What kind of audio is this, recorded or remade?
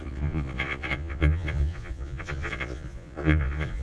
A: remade